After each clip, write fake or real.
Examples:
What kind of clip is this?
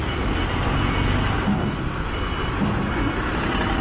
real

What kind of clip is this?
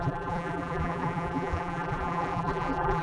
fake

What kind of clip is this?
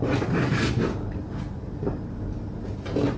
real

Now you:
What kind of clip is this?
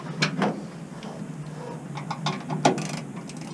real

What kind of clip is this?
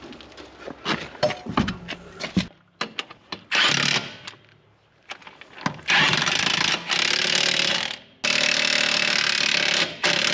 real